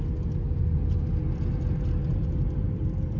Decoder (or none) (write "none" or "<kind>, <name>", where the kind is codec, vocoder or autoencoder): none